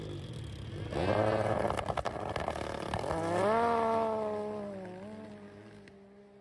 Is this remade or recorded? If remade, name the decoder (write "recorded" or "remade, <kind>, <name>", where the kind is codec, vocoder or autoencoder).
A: recorded